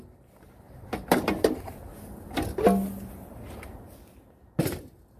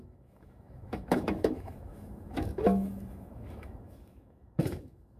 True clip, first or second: first